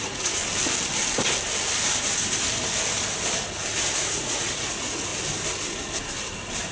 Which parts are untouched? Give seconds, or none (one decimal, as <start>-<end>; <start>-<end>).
0.4-4.0; 5.1-6.7